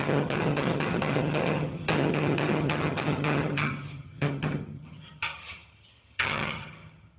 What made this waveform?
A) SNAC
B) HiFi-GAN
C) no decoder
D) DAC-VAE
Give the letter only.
B